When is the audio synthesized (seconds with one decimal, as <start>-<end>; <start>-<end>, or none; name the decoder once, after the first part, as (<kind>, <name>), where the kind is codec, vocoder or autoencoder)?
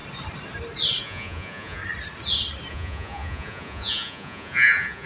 1.0-1.8 (vocoder, Vocos); 2.7-5.0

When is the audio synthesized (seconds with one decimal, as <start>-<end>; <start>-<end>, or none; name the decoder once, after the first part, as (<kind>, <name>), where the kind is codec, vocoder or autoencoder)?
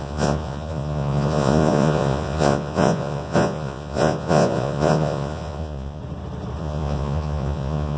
0.0-6.0 (vocoder, Vocos); 6.6-8.0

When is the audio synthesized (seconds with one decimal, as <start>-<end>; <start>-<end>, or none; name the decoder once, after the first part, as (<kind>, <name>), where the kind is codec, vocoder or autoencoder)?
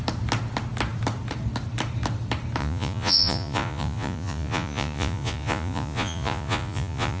2.6-7.2 (vocoder, Vocos)